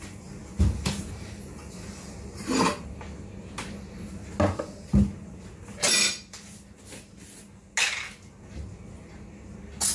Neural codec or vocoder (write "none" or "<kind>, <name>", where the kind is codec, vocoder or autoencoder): none